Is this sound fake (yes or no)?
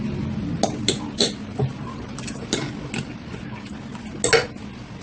no